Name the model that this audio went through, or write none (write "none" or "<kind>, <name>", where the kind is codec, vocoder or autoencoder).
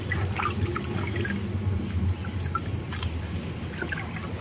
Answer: none